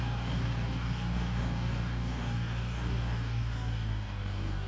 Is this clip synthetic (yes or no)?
yes